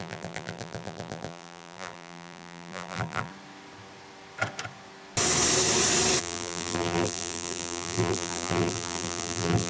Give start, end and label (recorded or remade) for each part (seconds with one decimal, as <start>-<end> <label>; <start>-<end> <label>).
0.0-3.3 remade; 3.3-6.2 recorded; 6.2-9.7 remade